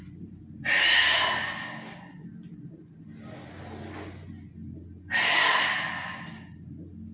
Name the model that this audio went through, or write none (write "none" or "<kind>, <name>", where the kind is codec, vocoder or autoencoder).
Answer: none